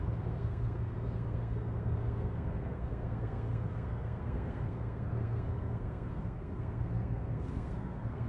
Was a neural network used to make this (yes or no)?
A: yes